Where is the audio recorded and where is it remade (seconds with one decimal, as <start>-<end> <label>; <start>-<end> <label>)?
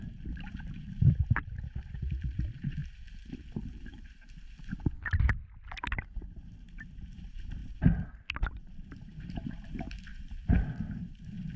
0.0-2.8 remade; 2.8-6.1 recorded; 6.1-7.6 remade; 7.6-8.5 recorded; 8.5-11.6 remade